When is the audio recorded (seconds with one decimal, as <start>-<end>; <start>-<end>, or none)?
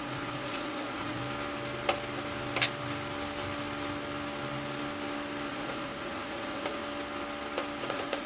1.2-5.5; 6.8-7.8